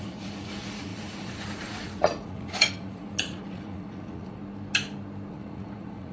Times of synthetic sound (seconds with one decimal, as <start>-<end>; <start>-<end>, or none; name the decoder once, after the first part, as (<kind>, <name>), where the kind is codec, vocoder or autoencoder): 0.0-4.4 (vocoder, Vocos); 5.3-6.1